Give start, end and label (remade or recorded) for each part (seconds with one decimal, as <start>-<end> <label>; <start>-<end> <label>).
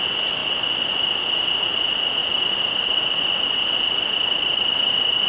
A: 0.0-5.3 recorded